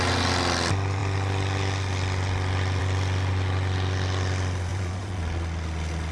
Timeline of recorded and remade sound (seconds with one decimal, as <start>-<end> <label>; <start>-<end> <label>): 0.0-4.7 recorded; 4.7-5.2 remade; 5.2-6.1 recorded